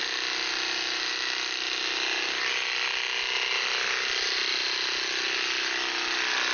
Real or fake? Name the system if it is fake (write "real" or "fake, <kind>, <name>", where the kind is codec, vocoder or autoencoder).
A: real